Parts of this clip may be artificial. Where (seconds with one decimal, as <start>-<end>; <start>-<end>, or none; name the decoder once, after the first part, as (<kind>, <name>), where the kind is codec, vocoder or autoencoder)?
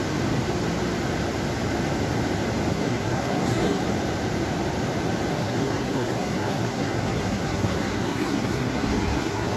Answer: 2.7-3.8 (codec, SNAC); 5.3-9.6